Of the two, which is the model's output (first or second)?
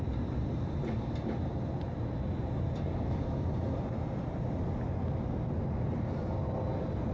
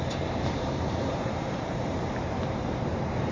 second